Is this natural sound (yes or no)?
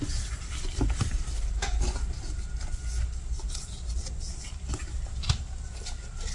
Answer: yes